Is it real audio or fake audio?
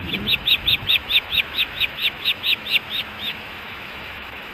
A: fake